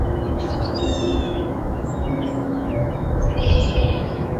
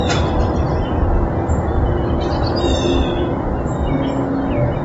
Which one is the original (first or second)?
second